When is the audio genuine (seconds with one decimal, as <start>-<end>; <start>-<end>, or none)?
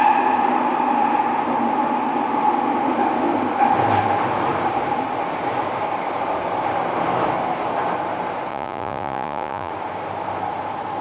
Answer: 0.0-8.5; 9.7-11.0